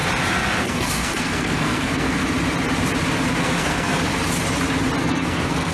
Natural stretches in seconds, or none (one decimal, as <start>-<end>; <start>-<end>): 0.0-0.6; 2.2-3.4; 3.9-5.0